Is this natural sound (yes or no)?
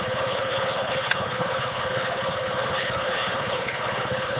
no